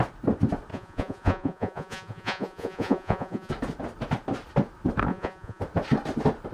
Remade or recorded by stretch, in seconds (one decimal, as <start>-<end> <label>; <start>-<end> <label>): 0.0-0.7 recorded; 0.7-3.5 remade; 3.5-5.1 recorded; 5.1-5.6 remade; 5.6-6.5 recorded